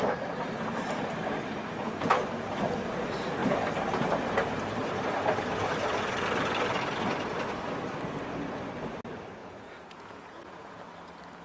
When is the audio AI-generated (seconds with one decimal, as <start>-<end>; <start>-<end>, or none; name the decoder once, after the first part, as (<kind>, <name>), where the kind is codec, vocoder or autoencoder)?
9.4-10.8 (vocoder, Vocos)